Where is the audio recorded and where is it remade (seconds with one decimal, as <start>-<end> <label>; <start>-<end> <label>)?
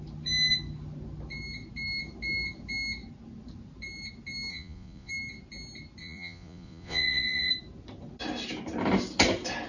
0.0-4.5 recorded; 4.5-5.1 remade; 5.1-6.0 recorded; 6.0-7.5 remade; 7.5-9.7 recorded